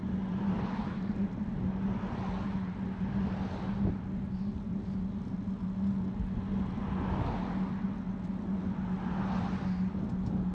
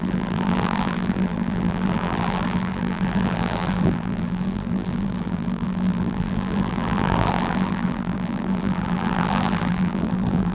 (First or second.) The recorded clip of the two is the first